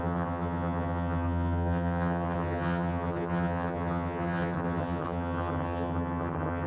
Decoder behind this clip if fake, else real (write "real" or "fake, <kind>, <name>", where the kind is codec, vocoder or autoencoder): fake, vocoder, HiFi-GAN